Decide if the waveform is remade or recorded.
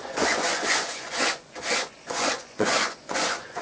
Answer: remade